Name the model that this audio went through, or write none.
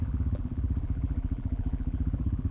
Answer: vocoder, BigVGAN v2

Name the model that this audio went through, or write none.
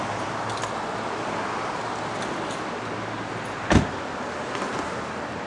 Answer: none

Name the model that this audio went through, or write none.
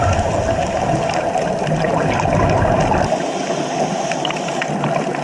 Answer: none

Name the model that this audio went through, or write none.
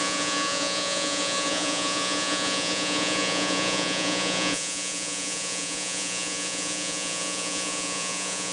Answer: vocoder, Vocos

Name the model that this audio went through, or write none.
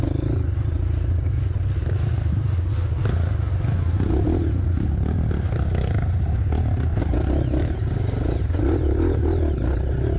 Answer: none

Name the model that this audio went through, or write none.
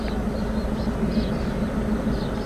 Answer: none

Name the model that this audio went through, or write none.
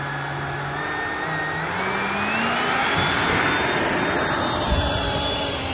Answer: none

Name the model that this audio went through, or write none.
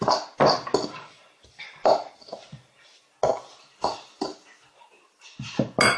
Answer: none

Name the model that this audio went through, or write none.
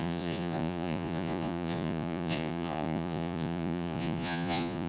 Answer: vocoder, Vocos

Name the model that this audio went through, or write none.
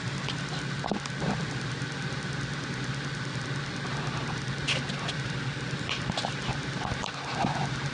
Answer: none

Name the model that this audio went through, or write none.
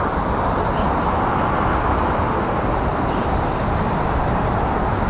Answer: none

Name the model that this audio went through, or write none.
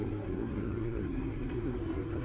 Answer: codec, SNAC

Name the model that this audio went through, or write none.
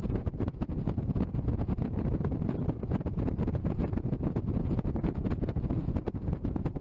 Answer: vocoder, Vocos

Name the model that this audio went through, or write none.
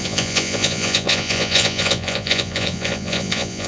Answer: vocoder, Vocos